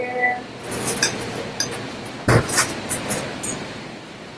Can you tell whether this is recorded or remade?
recorded